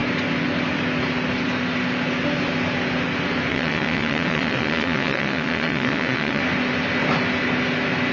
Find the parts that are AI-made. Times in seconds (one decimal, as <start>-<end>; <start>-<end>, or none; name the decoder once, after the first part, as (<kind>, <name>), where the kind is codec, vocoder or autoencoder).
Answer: 3.5-6.4 (vocoder, WaveNeXt)